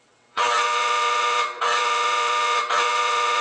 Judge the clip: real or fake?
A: fake